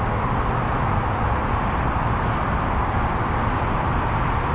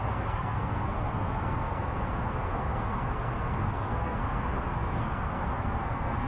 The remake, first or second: second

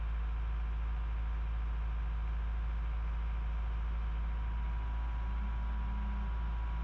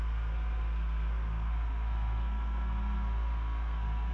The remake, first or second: second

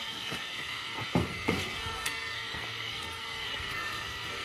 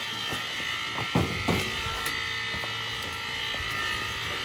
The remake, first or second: first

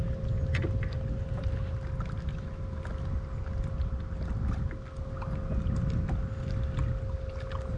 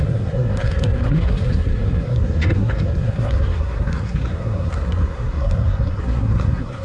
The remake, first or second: second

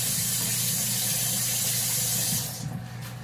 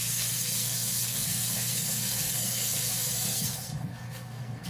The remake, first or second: second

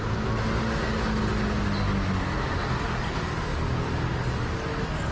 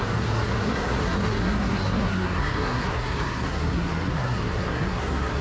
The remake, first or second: second